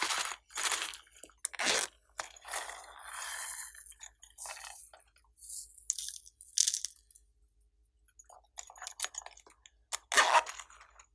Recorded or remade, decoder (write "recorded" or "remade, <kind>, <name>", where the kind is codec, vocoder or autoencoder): recorded